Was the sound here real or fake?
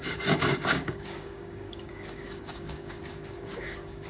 fake